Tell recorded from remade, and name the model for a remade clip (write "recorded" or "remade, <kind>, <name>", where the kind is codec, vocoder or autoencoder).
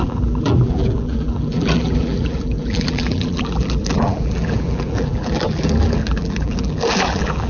remade, vocoder, BigVGAN v2